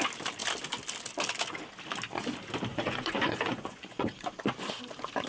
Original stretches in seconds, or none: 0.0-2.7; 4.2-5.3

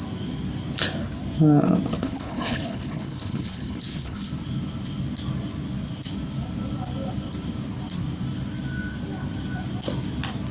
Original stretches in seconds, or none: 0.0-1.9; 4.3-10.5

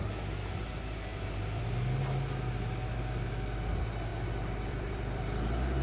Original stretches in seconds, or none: 0.0-1.1; 2.0-4.1; 5.2-5.8

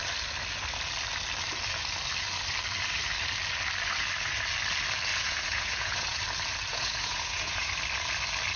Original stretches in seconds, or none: 0.0-5.1; 6.2-6.7; 7.7-8.6

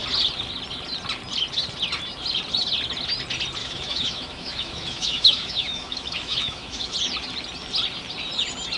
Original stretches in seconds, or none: 0.0-3.6; 6.9-8.8

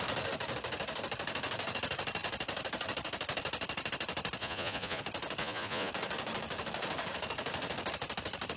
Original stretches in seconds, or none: 0.0-4.4; 5.0-5.4; 5.9-8.6